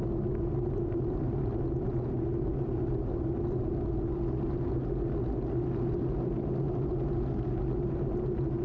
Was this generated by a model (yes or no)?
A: no